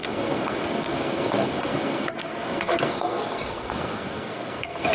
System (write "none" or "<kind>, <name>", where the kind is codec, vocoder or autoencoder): codec, SNAC